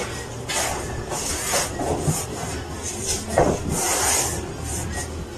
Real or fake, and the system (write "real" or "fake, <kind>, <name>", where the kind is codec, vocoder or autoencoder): real